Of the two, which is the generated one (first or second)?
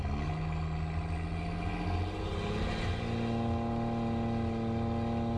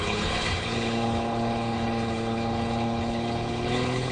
second